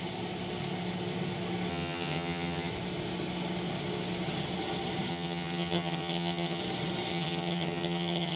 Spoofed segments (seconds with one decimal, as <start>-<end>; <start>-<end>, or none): 1.7-2.7; 5.1-6.6; 7.1-8.4